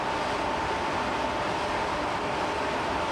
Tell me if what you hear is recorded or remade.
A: recorded